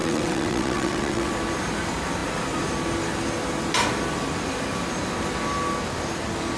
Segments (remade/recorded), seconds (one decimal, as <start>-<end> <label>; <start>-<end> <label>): 0.0-1.3 remade; 1.3-6.6 recorded